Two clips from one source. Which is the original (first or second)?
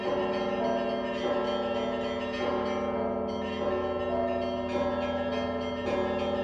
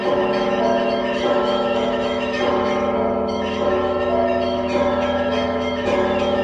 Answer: first